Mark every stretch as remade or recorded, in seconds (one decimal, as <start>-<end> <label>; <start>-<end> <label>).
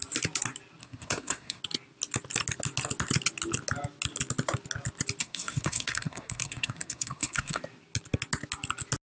0.0-0.8 recorded; 0.8-1.6 remade; 1.6-5.2 recorded; 5.2-7.6 remade; 7.6-9.1 recorded